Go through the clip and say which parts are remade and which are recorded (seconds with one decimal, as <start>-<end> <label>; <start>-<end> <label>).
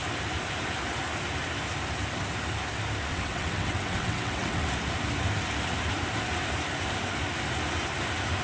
0.0-3.1 recorded; 3.1-4.7 remade; 4.7-8.4 recorded